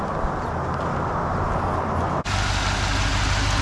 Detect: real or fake real